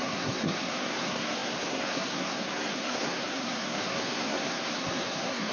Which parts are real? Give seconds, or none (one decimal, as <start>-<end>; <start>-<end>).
none

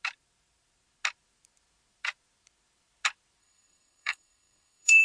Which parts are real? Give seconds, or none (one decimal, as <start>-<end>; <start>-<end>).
0.0-3.4

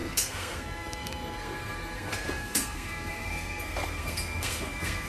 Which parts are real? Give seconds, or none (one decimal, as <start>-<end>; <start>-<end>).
none

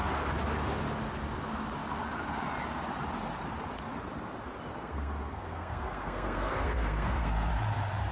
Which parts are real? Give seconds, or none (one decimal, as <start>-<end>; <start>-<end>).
0.0-4.7; 7.5-8.1

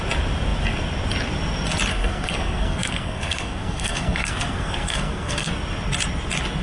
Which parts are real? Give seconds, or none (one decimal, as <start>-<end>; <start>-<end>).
0.0-1.9; 5.5-6.6

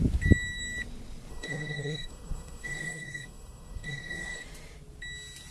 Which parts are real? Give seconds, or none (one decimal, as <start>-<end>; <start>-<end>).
0.0-1.3; 4.4-5.5

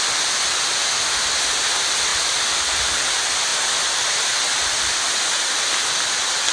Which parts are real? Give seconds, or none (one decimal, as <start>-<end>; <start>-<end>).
0.0-6.5

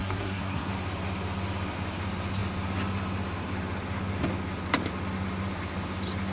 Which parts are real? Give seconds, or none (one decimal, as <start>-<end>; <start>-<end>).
0.7-6.3